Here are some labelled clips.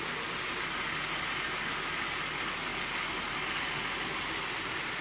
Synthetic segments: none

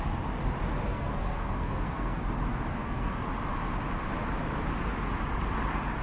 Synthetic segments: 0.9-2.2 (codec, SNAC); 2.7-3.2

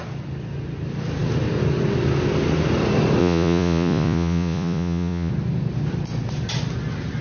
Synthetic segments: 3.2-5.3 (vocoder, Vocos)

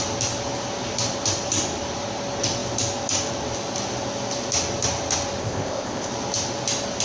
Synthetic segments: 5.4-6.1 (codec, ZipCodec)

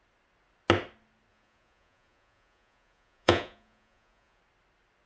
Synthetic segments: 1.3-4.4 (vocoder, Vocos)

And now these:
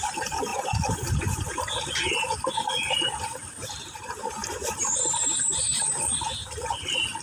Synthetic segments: 0.0-7.2 (vocoder, BigVGAN v2)

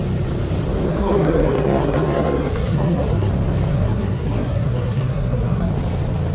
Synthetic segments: 0.9-3.3 (codec, SNAC); 3.7-5.7

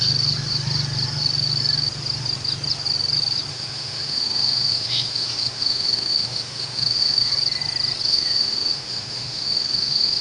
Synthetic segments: 3.5-7.3 (autoencoder, DAC-VAE); 8.1-10.2